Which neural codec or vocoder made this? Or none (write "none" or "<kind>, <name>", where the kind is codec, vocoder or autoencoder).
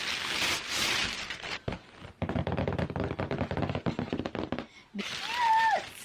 none